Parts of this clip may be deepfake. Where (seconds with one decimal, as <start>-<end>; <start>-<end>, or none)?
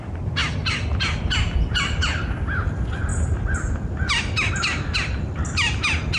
none